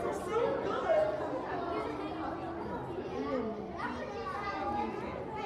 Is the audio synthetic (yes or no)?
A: no